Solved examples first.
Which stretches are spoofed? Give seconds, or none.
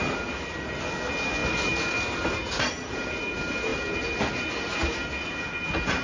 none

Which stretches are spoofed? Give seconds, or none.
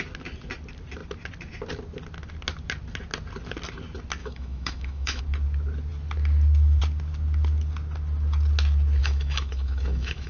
4.2-5.2 (autoencoder, DAC-VAE); 9.0-10.3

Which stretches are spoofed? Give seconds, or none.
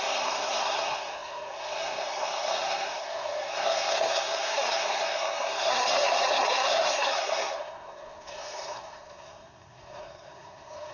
0.0-10.9 (codec, SNAC)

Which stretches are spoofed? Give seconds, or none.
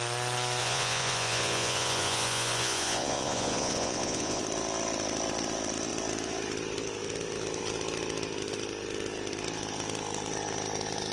0.6-4.4 (vocoder, Vocos)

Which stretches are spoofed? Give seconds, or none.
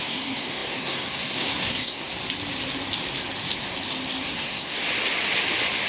0.0-2.1 (codec, SNAC); 4.2-4.8